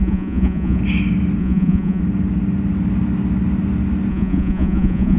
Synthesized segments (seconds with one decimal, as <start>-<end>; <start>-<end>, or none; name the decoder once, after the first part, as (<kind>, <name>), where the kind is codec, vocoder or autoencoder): 0.0-0.8 (vocoder, Vocos); 1.4-2.0; 4.1-5.2